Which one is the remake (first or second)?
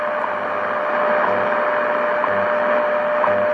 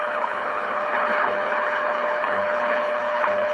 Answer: second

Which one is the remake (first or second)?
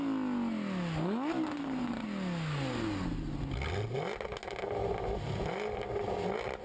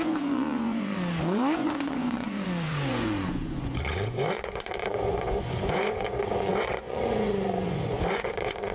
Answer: second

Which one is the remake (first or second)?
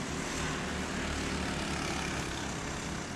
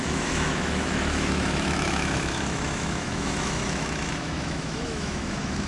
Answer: second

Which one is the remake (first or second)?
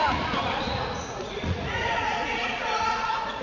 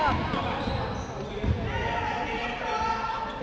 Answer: first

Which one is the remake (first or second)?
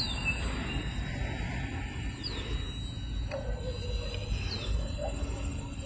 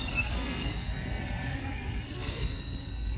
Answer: second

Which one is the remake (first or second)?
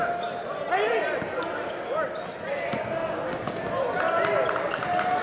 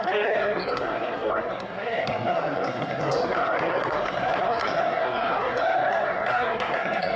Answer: second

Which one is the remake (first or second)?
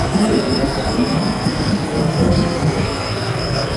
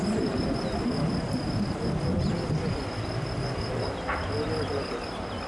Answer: first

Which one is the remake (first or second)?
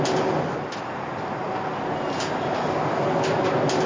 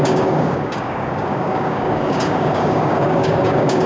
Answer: second